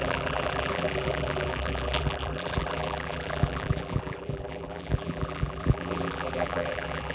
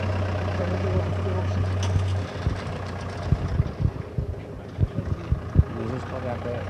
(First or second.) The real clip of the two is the second